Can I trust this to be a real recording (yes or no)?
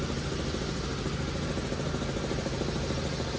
yes